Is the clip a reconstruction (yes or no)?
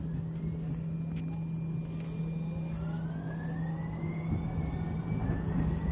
no